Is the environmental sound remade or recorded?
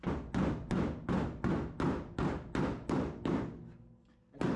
recorded